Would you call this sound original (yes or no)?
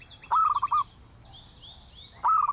yes